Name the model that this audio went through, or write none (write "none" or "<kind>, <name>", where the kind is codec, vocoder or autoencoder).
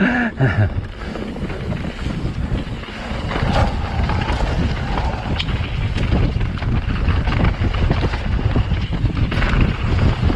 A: none